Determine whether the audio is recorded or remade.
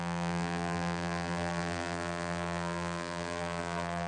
remade